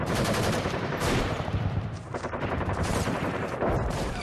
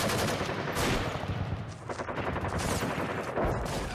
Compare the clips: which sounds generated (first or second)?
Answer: first